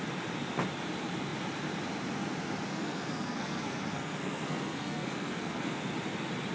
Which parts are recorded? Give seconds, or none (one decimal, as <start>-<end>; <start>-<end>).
0.0-2.7; 5.8-6.5